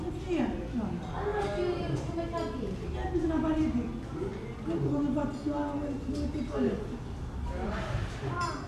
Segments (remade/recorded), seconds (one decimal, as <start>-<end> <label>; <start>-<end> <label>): 0.0-1.3 recorded; 1.3-2.2 remade; 2.2-8.7 recorded